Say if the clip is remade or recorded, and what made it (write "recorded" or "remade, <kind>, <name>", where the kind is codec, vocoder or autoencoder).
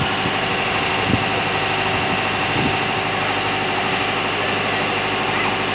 recorded